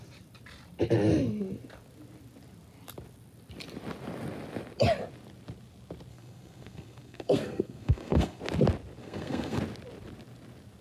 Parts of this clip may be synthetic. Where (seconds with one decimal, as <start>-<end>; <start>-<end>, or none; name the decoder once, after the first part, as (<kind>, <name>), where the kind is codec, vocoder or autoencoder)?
6.1-8.4 (codec, SNAC); 9.0-9.6